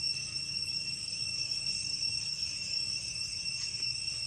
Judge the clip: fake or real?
fake